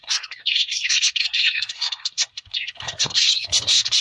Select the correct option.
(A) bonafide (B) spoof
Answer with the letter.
B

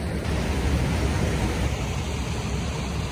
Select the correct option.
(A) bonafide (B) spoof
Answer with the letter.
A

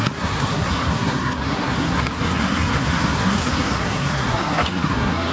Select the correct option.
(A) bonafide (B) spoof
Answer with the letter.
B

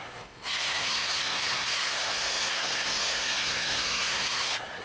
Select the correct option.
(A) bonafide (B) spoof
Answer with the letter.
B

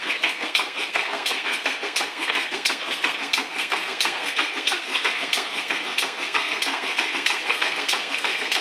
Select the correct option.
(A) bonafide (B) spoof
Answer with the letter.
B